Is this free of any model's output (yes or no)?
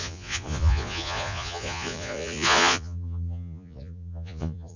no